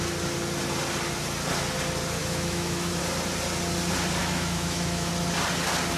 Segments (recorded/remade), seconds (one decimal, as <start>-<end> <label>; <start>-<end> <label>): 0.0-2.2 recorded; 2.2-3.0 remade; 3.0-4.2 recorded; 4.2-5.1 remade; 5.1-6.0 recorded